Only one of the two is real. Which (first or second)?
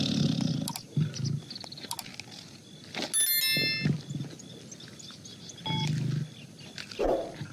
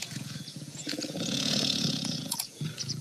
first